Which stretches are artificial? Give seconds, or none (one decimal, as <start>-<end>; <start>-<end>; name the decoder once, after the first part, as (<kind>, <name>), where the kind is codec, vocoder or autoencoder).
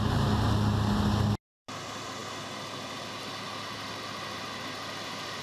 none